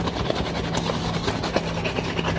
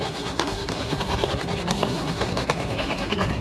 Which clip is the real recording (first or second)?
first